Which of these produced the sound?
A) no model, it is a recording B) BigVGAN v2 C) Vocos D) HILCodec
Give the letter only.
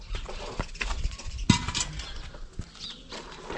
A